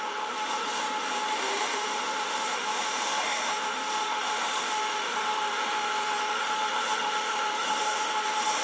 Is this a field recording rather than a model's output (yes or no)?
no